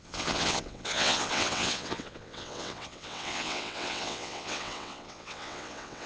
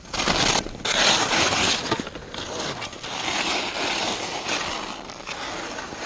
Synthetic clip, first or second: first